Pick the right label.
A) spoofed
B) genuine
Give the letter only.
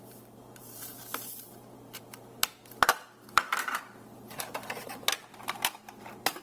A